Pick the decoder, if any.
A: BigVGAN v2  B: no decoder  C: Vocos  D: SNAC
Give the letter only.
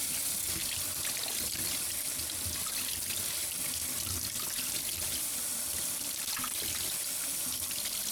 B